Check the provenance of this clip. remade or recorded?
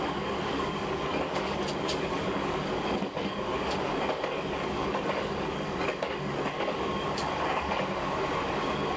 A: remade